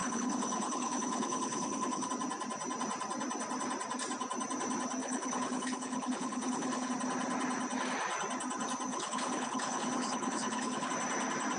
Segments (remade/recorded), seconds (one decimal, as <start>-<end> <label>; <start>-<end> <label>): 0.0-2.1 remade; 2.1-5.0 recorded; 5.0-6.9 remade; 6.9-8.9 recorded; 8.9-10.9 remade; 10.9-11.6 recorded